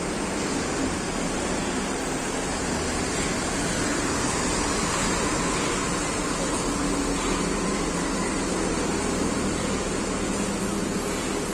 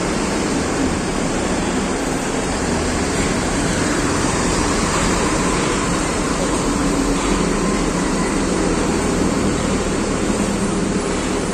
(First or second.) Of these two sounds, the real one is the first